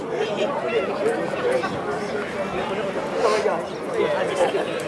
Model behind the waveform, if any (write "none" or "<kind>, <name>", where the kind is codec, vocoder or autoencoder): none